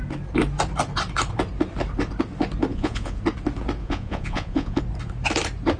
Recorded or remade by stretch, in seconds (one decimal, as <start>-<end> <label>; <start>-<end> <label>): 0.0-2.7 recorded; 2.7-3.2 remade; 3.2-3.8 recorded; 3.8-4.8 remade; 4.8-5.8 recorded